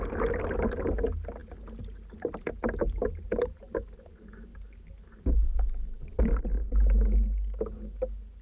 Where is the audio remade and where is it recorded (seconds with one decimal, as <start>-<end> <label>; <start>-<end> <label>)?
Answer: 0.0-8.4 recorded